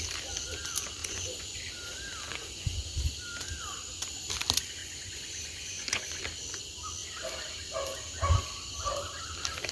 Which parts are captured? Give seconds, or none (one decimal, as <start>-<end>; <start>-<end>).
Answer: 0.0-1.0; 1.6-2.3; 3.0-4.8; 6.2-9.7